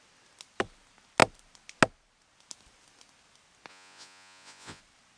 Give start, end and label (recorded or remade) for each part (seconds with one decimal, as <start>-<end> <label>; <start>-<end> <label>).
0.0-3.7 recorded; 3.7-4.8 remade; 4.8-5.2 recorded

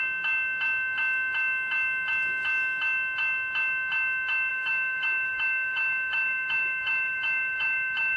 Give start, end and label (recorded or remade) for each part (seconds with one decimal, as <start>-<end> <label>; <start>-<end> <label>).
0.0-4.5 recorded; 4.5-8.2 remade

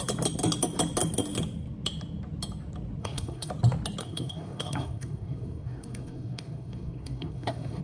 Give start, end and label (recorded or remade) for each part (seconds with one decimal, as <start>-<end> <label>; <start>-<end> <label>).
0.0-3.0 recorded; 3.0-3.5 remade; 3.5-4.0 recorded; 4.0-7.8 remade

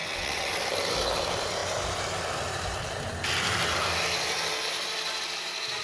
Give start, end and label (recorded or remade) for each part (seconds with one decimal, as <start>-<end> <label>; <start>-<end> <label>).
0.0-0.5 remade; 0.5-5.8 recorded

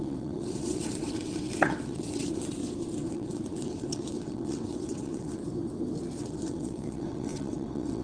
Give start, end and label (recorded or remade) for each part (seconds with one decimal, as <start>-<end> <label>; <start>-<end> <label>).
0.0-2.6 remade; 2.6-3.1 recorded; 3.1-5.4 remade; 5.4-6.2 recorded; 6.2-8.0 remade

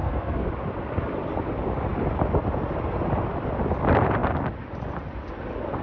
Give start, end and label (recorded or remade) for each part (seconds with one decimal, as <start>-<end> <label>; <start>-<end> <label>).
0.0-0.5 remade; 0.5-5.8 recorded

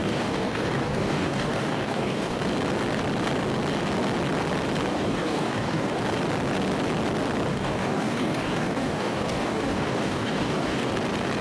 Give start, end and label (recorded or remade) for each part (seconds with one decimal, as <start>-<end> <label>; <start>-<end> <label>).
0.0-2.4 remade; 2.4-4.9 recorded; 4.9-6.0 remade; 6.0-7.5 recorded; 7.5-10.9 remade; 10.9-11.4 recorded